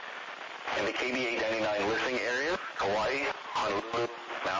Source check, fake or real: real